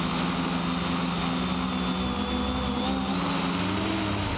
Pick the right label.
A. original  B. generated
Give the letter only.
A